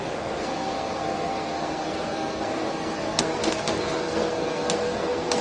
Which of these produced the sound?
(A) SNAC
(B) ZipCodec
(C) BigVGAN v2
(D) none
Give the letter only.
A